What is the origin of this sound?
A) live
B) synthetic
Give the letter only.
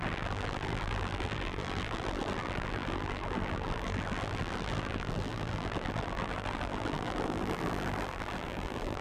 B